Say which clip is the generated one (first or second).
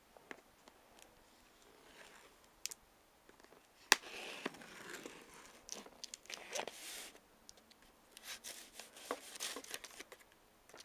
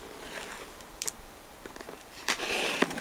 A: second